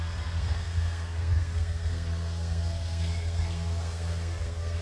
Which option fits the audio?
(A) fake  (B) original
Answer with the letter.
A